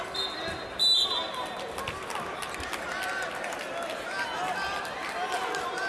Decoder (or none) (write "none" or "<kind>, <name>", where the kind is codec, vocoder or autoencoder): none